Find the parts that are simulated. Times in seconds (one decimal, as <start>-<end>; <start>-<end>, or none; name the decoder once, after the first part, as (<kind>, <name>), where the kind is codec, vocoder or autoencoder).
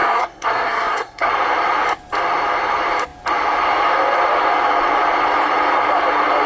0.0-1.3 (codec, SNAC)